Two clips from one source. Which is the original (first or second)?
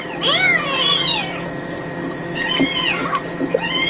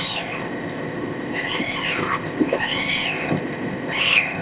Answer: first